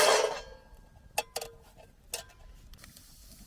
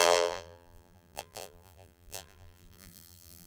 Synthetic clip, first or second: second